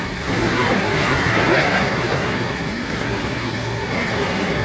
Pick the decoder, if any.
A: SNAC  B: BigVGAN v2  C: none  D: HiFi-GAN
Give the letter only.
A